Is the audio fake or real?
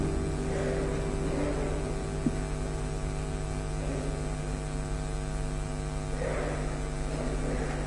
real